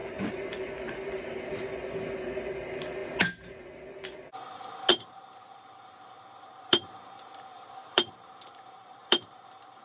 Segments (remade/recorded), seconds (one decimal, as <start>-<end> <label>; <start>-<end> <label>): 0.0-0.7 remade; 0.7-4.9 recorded; 4.9-9.8 remade